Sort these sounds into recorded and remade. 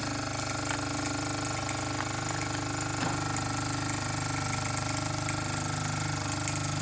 recorded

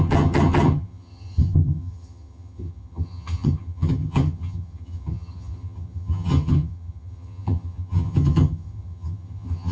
remade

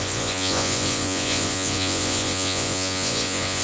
remade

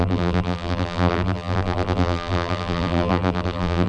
remade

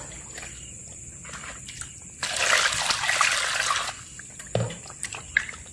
recorded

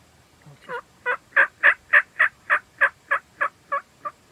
recorded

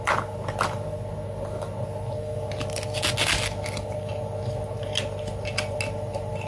recorded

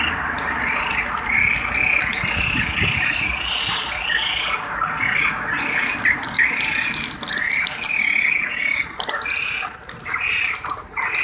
recorded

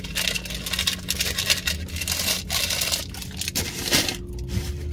recorded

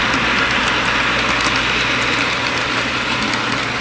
recorded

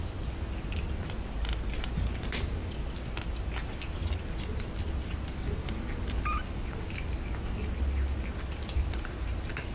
recorded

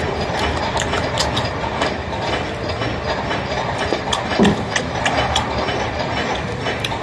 remade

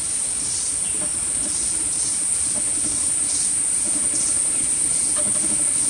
remade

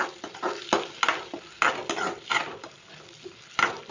recorded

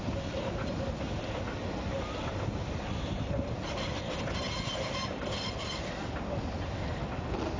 recorded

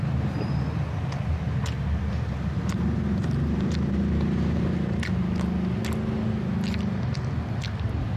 recorded